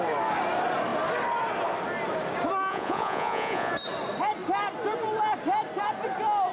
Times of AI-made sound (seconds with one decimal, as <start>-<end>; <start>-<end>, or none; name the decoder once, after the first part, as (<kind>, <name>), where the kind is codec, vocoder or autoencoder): 2.7-3.7 (vocoder, Vocos)